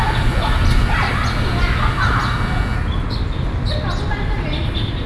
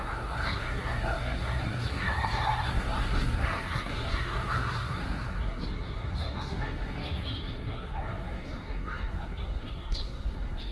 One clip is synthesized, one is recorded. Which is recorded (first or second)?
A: first